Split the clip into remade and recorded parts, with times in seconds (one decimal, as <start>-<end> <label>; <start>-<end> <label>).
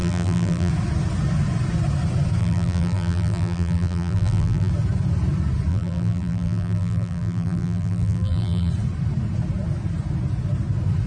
0.0-0.7 remade; 0.7-2.4 recorded; 2.4-4.7 remade; 4.7-5.7 recorded; 5.7-8.7 remade; 8.7-11.1 recorded